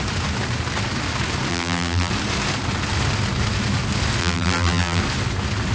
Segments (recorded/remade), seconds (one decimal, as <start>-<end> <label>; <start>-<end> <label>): 0.0-1.5 recorded; 1.5-2.1 remade; 2.1-4.2 recorded; 4.2-5.0 remade; 5.0-5.7 recorded